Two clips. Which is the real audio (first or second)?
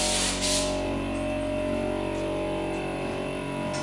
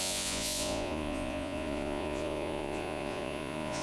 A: first